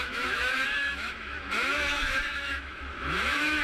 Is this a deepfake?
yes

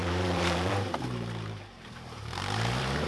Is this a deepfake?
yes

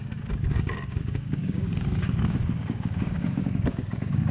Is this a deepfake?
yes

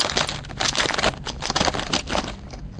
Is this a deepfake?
no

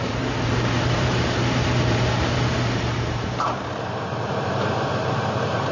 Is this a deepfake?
yes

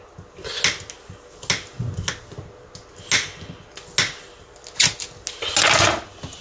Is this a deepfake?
no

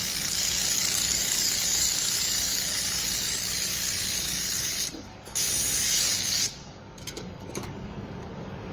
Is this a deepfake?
yes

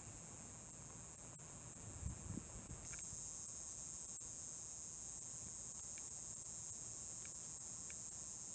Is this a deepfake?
no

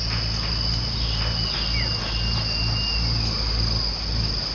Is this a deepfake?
no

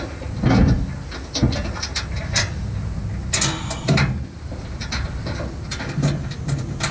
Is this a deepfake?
no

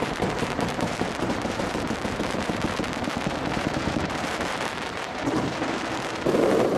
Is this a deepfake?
yes